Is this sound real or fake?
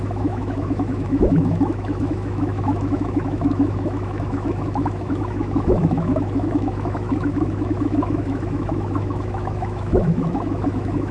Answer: fake